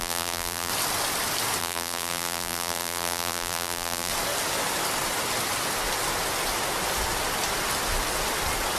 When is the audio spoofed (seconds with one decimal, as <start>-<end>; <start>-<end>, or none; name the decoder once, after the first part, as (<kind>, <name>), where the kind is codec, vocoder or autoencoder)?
0.0-0.7 (vocoder, BigVGAN v2); 1.6-4.1